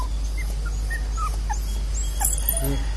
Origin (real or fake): real